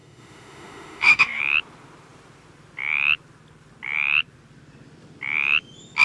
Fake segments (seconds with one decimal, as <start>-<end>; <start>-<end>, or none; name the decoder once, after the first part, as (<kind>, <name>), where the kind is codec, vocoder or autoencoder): 0.0-1.4 (autoencoder, DAC-VAE)